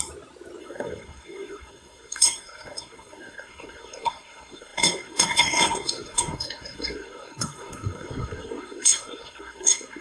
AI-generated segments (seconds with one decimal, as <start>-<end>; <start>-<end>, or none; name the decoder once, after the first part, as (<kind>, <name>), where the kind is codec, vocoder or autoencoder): 0.6-10.0 (codec, SNAC)